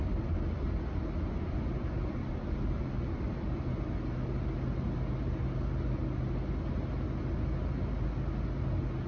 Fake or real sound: real